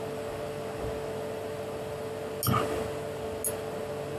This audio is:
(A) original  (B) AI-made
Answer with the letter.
A